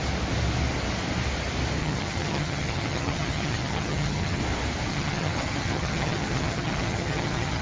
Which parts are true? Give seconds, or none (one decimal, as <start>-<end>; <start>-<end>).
0.0-1.8; 4.4-4.9